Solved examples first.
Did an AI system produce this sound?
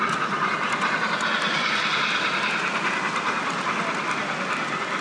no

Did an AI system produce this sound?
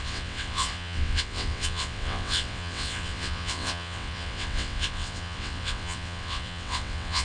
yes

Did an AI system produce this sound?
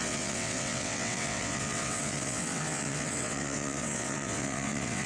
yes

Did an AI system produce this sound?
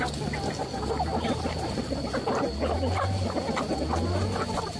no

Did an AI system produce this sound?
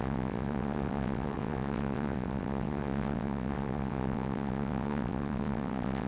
yes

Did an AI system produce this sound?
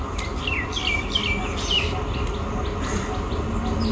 no